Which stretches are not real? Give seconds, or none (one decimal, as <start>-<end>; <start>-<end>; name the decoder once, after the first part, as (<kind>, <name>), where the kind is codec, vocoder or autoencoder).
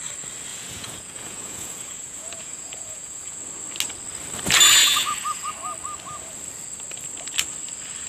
0.5-3.4 (vocoder, Vocos); 4.8-5.5